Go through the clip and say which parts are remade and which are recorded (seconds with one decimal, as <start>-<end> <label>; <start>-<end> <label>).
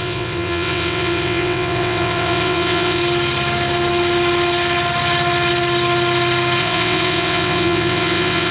0.0-3.0 remade; 3.0-6.6 recorded; 6.6-8.5 remade